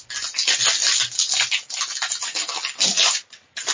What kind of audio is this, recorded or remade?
recorded